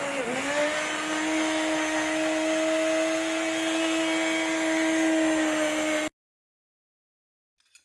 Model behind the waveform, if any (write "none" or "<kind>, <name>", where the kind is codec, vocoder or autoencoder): none